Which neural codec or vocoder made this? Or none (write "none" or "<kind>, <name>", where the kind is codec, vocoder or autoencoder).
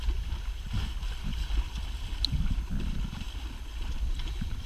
none